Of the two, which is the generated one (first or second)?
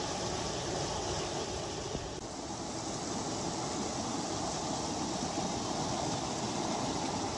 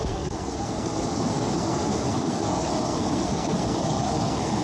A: second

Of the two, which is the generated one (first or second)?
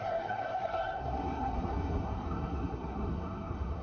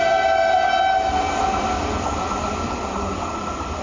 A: first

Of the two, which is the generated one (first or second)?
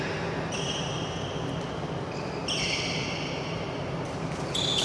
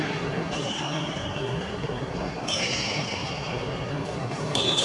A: second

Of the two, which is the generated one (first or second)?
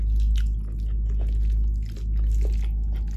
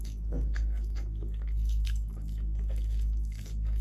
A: second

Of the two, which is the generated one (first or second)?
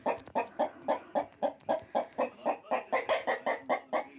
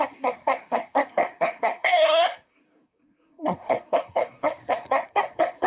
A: second